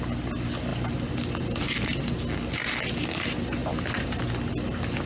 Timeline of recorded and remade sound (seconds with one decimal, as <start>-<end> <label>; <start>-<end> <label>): 0.0-5.1 recorded